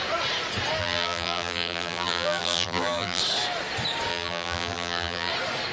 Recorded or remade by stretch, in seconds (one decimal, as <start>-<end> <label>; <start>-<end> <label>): 0.0-0.8 recorded; 0.8-3.2 remade; 3.2-4.1 recorded; 4.1-5.3 remade; 5.3-5.7 recorded